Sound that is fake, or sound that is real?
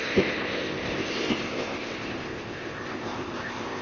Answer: fake